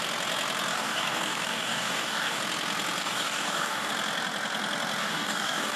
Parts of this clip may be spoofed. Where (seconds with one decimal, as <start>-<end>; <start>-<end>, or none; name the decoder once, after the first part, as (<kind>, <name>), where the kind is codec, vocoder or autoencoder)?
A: 0.7-2.4 (codec, DAC); 3.0-3.9; 5.0-5.8